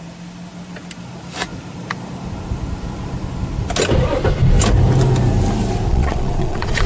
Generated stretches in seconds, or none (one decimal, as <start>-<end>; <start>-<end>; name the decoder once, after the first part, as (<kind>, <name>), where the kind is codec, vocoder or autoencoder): 5.9-6.9 (vocoder, Vocos)